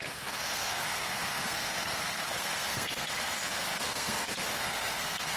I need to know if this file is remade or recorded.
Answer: remade